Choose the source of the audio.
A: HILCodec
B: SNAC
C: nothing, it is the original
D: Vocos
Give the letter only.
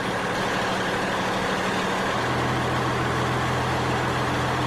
C